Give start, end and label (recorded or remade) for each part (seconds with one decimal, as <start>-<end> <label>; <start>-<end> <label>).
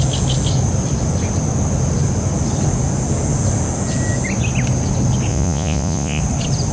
0.0-5.3 recorded; 5.3-6.2 remade; 6.2-6.7 recorded